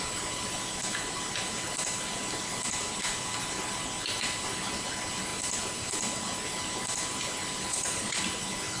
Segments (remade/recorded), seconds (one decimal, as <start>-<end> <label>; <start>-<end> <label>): 0.0-7.7 recorded; 7.7-8.2 remade; 8.2-8.8 recorded